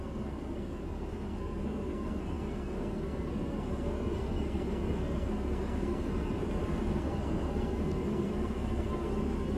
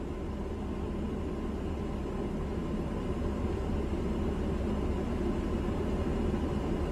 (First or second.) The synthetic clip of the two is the first